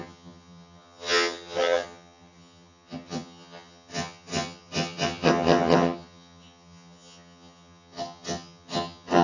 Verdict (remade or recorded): remade